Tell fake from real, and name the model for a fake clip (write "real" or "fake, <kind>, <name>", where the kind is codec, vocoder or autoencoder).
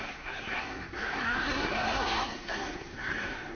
fake, codec, SNAC